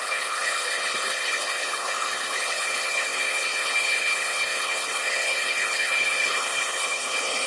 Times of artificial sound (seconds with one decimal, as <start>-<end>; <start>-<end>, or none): 0.0-7.5